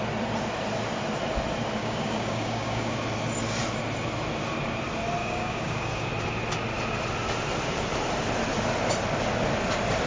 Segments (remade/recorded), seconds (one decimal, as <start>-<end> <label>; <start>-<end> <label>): 0.0-1.8 recorded; 1.8-2.9 remade; 2.9-5.2 recorded; 5.2-6.1 remade; 6.1-10.1 recorded